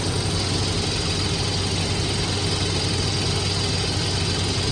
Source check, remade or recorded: recorded